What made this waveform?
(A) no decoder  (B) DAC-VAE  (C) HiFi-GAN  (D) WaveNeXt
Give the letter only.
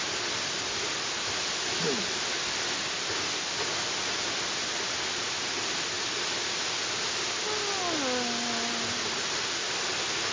A